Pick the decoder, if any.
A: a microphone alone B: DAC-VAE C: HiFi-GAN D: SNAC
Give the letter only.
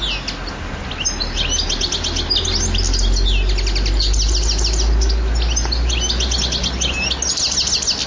A